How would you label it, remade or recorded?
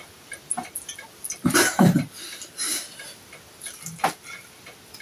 recorded